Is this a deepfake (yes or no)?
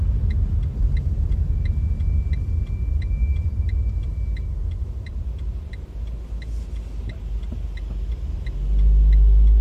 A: no